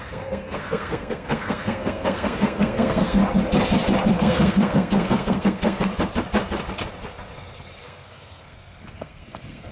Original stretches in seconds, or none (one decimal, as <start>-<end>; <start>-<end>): 3.2-4.2; 5.9-7.8